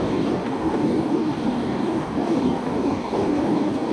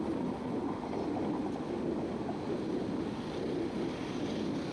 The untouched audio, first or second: second